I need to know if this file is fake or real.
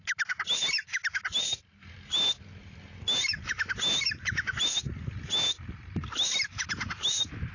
fake